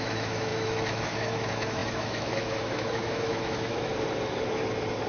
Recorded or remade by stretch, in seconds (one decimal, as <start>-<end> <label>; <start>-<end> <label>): 0.0-3.9 remade; 3.9-5.1 recorded